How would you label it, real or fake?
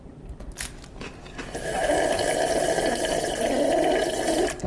real